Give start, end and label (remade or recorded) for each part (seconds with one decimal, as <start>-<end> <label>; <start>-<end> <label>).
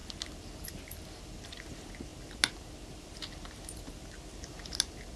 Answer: 0.0-5.2 recorded